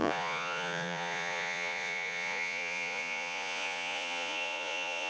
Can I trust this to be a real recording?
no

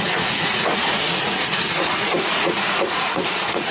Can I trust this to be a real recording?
no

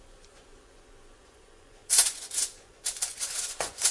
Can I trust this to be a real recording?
no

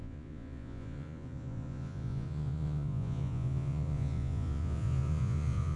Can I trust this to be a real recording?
no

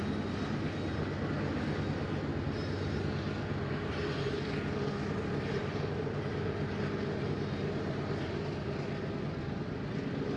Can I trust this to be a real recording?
yes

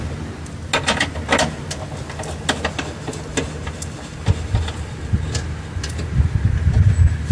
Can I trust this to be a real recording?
yes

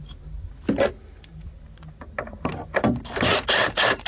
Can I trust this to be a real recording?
yes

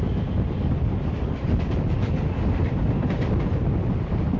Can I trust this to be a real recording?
yes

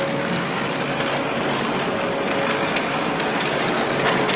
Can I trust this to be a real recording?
yes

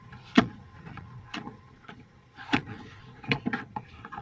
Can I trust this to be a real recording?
no